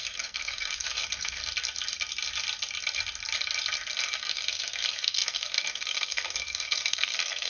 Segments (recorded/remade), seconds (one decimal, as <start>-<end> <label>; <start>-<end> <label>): 0.0-1.4 remade; 1.4-4.0 recorded; 4.0-7.5 remade